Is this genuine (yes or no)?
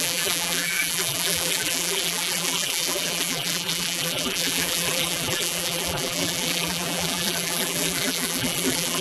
no